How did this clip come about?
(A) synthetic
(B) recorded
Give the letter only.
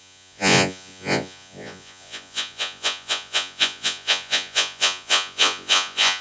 A